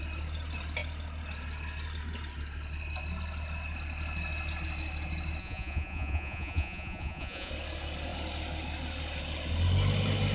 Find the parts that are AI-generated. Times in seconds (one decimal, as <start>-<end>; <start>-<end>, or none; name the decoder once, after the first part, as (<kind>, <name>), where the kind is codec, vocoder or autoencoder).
5.4-7.5 (vocoder, Vocos)